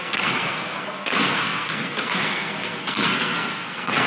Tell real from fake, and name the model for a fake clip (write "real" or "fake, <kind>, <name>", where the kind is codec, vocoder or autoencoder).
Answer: fake, codec, SNAC